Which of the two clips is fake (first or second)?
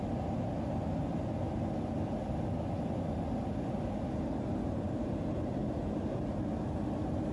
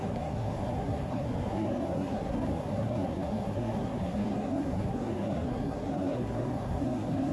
second